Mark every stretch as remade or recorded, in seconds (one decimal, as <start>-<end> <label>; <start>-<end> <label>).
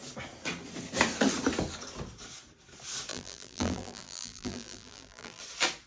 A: 0.0-3.1 recorded; 3.1-5.4 remade; 5.4-5.9 recorded